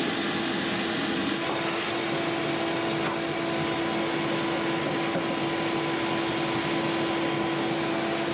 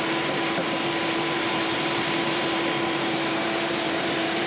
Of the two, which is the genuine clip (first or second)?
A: first